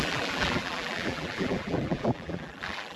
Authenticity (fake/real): fake